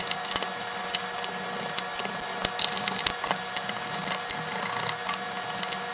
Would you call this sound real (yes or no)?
yes